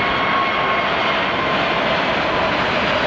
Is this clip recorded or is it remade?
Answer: recorded